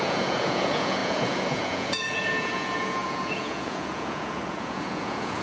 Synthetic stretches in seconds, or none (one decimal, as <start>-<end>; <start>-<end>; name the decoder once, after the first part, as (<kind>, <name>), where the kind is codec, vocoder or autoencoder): 0.0-5.4 (vocoder, Vocos)